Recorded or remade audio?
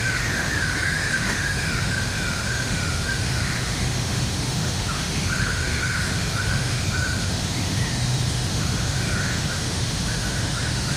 remade